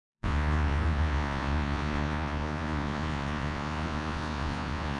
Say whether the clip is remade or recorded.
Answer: remade